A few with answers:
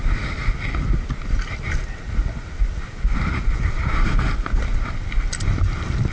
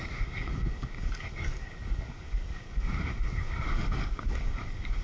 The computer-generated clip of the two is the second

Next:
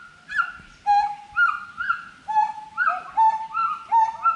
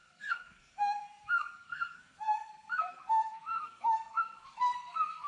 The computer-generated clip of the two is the second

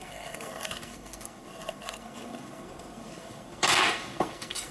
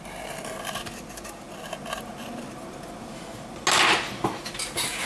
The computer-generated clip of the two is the first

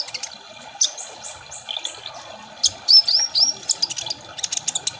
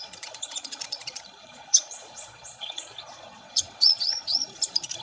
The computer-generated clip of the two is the second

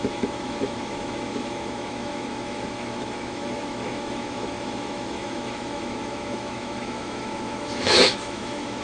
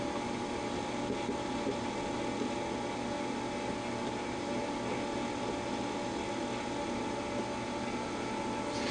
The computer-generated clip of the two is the first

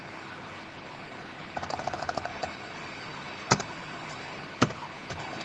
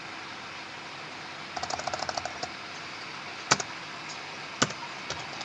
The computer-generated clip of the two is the first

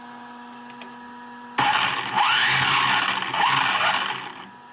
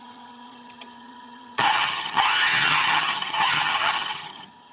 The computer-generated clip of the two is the second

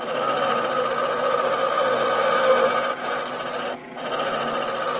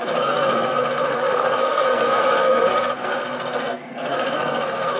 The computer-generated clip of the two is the second